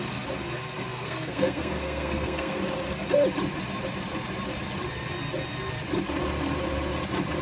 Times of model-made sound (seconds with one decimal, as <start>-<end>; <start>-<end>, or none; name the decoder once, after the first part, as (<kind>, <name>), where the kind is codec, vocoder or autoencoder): 0.9-2.6 (codec, SNAC)